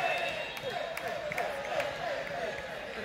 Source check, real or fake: fake